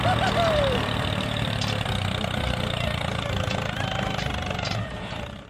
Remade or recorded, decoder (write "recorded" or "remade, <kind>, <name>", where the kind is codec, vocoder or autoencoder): remade, vocoder, BigVGAN v2